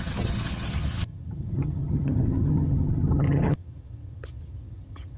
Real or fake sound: fake